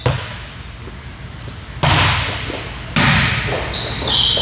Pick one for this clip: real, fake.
real